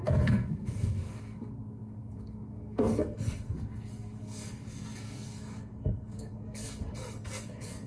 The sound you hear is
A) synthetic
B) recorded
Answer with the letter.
A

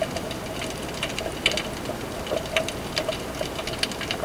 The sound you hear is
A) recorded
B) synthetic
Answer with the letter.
A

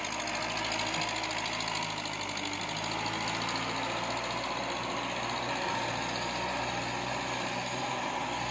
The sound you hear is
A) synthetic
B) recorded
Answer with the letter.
B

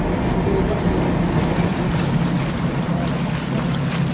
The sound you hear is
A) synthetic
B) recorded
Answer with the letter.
B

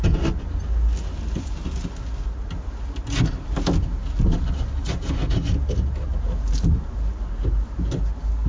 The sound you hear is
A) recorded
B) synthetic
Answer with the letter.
A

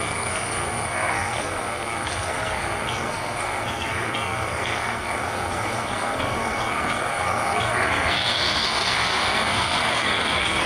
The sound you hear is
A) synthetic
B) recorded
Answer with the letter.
A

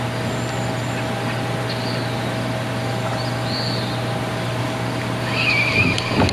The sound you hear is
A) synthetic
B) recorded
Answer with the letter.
B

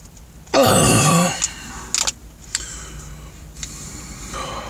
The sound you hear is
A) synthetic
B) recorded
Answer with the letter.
B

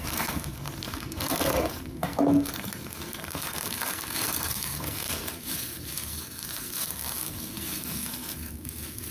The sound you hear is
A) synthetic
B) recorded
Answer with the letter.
A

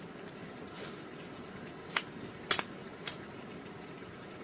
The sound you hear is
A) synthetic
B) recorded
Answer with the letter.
B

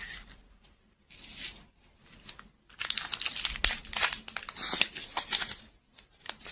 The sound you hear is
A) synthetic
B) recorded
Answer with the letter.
B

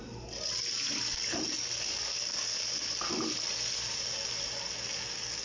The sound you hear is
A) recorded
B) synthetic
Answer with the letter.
A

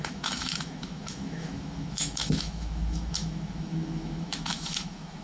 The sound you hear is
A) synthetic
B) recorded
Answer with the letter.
A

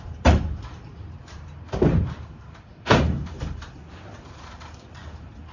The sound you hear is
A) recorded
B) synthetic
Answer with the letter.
B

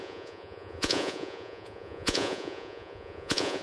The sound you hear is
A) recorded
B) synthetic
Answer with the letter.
B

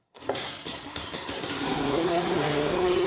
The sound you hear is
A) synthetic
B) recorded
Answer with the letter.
A